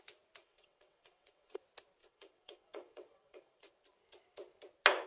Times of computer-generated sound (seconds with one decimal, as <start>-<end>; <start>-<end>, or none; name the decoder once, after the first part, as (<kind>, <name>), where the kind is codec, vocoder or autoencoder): 0.4-1.6 (vocoder, WaveNeXt); 2.0-3.7